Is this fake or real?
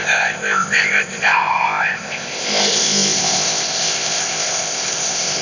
fake